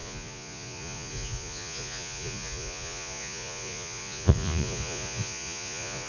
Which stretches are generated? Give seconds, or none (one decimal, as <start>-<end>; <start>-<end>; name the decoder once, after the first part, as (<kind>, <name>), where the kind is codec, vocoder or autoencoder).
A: 0.0-6.1 (vocoder, Vocos)